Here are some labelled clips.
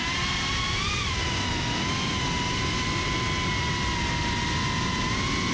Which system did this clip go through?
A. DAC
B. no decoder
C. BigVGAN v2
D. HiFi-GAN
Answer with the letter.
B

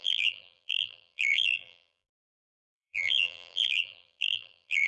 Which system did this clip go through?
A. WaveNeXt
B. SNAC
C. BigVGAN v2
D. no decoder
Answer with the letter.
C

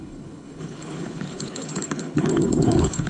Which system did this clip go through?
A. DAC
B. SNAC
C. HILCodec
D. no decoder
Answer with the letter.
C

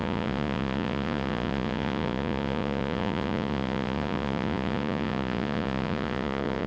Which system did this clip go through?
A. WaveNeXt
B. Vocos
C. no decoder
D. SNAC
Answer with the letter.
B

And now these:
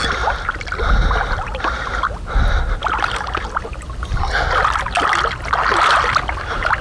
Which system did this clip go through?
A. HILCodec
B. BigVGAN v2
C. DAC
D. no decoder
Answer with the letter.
D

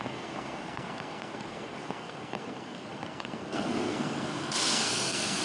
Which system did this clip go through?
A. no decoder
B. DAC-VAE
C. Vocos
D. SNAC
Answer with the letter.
D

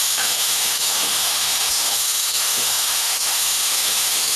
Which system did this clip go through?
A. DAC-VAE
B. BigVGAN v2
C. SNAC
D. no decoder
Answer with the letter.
A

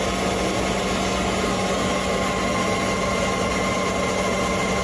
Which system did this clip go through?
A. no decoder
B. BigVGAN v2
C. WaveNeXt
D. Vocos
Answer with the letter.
A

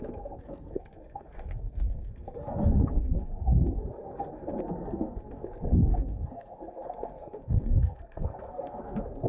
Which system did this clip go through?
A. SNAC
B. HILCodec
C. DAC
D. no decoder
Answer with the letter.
A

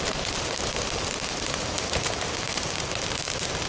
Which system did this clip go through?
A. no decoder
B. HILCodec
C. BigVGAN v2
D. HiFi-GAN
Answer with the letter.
C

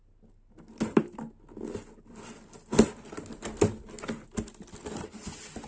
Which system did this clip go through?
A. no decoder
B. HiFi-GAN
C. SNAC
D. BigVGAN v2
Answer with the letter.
A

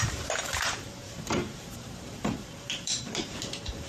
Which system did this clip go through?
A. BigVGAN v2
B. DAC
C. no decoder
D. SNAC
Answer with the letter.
A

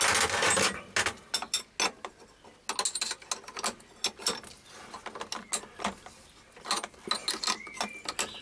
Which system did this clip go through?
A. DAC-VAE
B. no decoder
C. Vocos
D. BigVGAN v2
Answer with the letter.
B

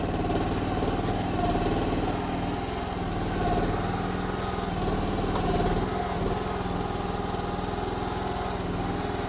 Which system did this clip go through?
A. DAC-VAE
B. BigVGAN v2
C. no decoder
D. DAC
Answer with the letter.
C